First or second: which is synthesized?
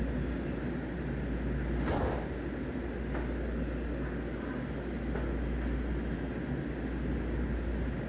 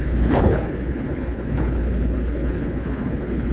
second